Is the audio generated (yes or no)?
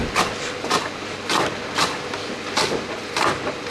no